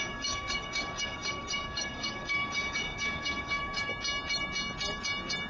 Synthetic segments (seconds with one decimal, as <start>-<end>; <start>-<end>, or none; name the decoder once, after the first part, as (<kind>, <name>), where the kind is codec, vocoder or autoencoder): 0.0-3.9 (codec, DAC)